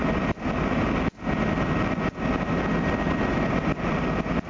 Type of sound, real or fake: real